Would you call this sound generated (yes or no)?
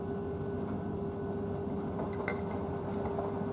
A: no